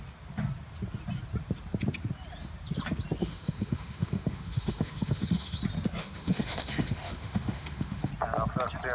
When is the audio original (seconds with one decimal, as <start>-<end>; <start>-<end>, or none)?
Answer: 0.0-3.2; 5.6-6.0; 8.1-8.9